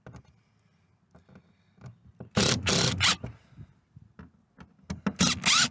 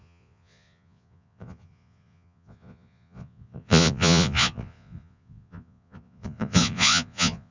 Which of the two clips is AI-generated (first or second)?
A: second